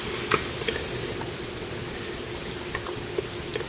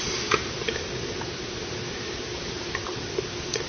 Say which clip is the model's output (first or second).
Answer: second